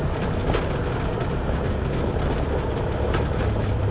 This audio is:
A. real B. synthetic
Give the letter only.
A